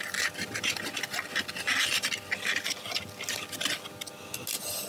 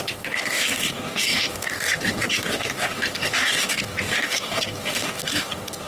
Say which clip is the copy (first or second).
second